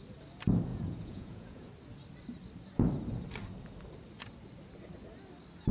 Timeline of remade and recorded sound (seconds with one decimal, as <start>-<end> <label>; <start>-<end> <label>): 0.0-0.7 recorded; 0.7-1.7 remade; 1.7-5.7 recorded